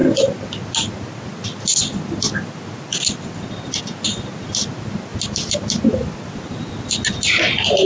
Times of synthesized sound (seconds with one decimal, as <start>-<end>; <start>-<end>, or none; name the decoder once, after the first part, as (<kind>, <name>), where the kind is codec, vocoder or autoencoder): none